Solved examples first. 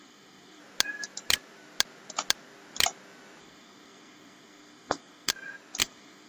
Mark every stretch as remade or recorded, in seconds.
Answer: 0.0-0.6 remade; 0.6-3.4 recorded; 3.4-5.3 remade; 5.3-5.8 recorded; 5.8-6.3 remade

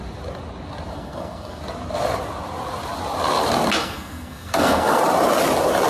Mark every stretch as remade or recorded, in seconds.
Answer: 0.0-0.9 recorded; 0.9-1.6 remade; 1.6-3.8 recorded; 3.8-5.0 remade; 5.0-5.9 recorded

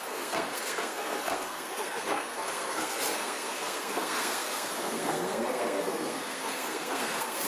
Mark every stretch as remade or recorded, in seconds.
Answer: 0.0-7.5 remade

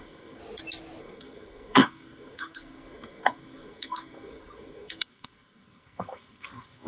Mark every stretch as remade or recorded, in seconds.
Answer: 0.0-0.4 remade; 0.4-1.0 recorded; 1.0-6.9 remade

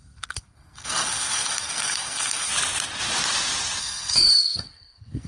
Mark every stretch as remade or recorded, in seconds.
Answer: 0.0-2.5 remade; 2.5-3.8 recorded; 3.8-5.3 remade

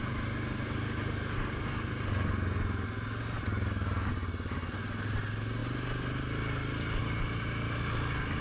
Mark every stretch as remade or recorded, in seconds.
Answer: 0.0-8.4 recorded

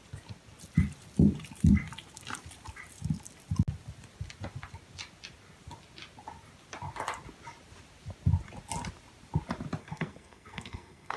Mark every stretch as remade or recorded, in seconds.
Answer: 0.0-9.8 recorded; 9.8-11.2 remade

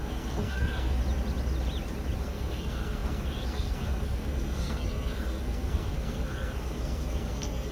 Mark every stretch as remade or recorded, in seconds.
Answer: 0.0-1.0 remade; 1.0-2.2 recorded; 2.2-7.7 remade